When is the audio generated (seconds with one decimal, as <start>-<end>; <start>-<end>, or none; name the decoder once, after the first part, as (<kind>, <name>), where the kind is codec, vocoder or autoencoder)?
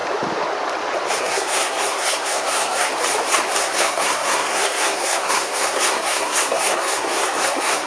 1.2-2.9 (codec, SNAC); 3.6-7.9